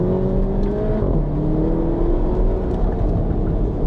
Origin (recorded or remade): recorded